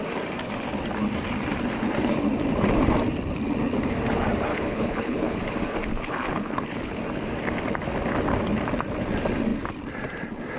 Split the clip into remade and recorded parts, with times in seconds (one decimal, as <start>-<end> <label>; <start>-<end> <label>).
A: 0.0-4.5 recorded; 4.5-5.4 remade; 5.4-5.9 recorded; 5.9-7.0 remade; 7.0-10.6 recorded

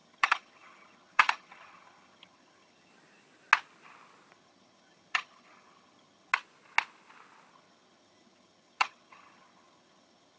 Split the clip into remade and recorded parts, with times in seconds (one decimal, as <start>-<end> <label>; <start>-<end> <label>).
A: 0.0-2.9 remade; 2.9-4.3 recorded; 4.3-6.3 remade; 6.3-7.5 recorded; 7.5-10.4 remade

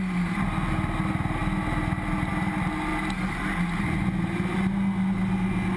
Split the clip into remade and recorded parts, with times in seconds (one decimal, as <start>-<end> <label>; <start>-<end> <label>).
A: 0.0-5.8 recorded